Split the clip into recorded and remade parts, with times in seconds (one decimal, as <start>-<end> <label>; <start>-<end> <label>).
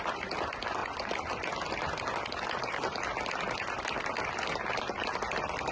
0.0-5.7 recorded